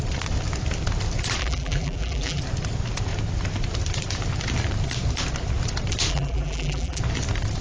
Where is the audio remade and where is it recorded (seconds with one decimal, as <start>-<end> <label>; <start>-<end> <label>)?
0.0-1.4 recorded; 1.4-2.4 remade; 2.4-6.1 recorded; 6.1-7.0 remade; 7.0-7.6 recorded